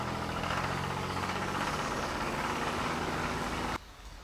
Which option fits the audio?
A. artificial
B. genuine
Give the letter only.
A